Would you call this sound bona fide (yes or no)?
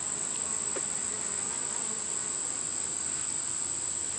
yes